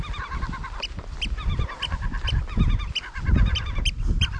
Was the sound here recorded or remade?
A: recorded